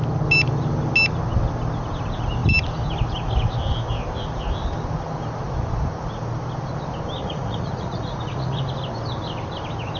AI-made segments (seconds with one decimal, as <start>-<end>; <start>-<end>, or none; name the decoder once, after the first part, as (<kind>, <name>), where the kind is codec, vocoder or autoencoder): 7.2-8.6 (vocoder, Vocos)